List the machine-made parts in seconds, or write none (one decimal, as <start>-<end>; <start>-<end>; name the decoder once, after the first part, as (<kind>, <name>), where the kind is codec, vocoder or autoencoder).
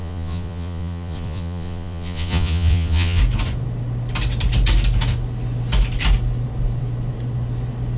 0.0-3.2 (vocoder, Vocos)